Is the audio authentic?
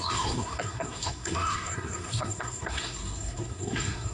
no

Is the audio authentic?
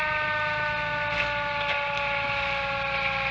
yes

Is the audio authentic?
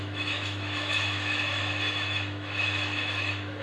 no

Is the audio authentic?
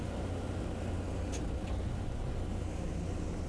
yes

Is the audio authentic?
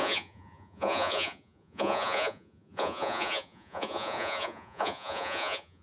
no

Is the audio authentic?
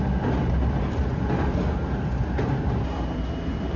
yes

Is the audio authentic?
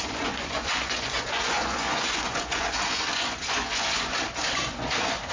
no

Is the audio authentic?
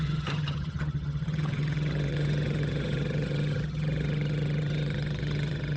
no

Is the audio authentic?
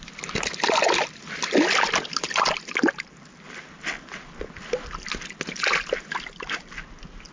yes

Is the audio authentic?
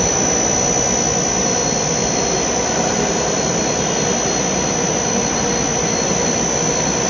yes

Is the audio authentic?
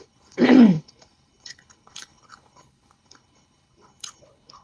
no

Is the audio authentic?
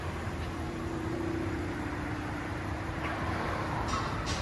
no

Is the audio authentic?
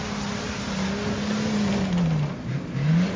yes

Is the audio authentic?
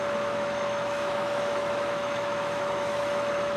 no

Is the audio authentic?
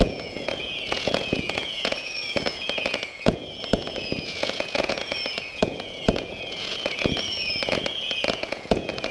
no